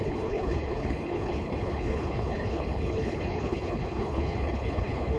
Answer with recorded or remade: remade